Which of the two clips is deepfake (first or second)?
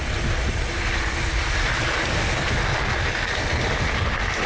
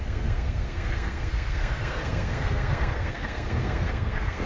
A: second